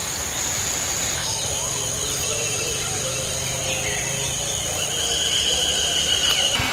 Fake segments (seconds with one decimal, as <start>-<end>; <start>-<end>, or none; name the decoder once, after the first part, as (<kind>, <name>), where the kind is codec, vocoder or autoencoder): 0.5-1.2 (vocoder, BigVGAN v2); 5.2-6.7